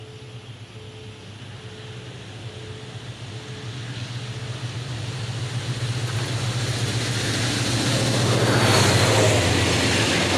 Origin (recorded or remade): recorded